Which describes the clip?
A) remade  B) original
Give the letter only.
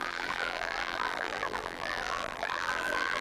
A